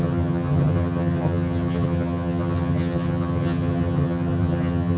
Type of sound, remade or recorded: remade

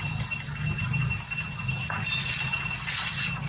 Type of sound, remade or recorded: recorded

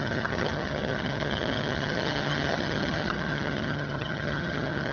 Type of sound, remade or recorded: remade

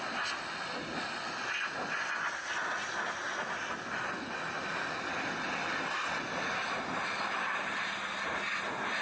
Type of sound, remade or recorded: recorded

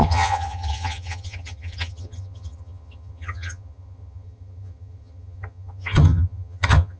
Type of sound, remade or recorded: remade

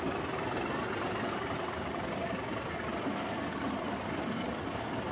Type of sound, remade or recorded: recorded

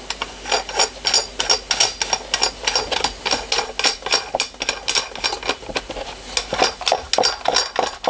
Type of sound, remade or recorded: recorded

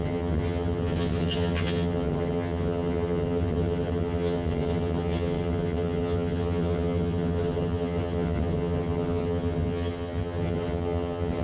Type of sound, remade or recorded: remade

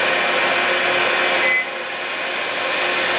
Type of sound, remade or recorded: recorded